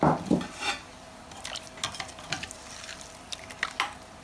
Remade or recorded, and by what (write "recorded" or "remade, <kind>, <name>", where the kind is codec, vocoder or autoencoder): recorded